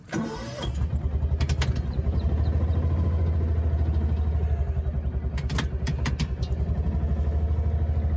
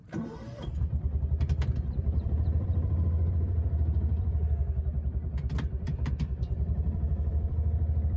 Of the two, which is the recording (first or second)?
first